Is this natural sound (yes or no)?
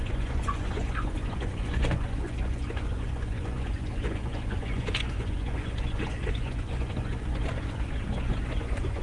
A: no